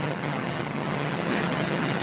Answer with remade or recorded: remade